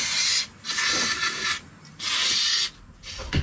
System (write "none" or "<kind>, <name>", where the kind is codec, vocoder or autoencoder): none